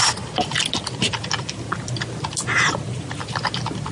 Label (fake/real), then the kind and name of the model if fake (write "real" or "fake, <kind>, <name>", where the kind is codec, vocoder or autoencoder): real